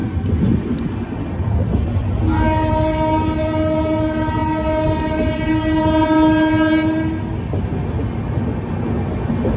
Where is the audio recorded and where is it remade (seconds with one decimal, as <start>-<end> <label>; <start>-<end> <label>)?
0.0-9.6 recorded